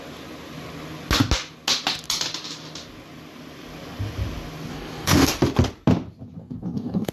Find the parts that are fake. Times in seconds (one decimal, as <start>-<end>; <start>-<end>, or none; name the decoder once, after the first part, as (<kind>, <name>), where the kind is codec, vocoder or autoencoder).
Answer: 4.7-5.3 (codec, DAC); 6.4-7.1